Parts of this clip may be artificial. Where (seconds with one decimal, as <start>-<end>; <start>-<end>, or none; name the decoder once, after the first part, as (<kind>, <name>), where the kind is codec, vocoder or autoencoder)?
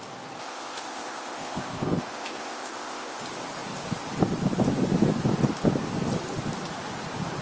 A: 0.4-3.2 (codec, ZipCodec)